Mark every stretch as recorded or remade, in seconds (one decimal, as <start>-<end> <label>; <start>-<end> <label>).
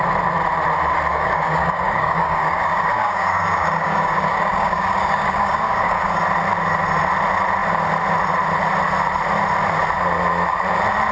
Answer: 0.0-1.1 recorded; 1.1-6.2 remade; 6.2-11.1 recorded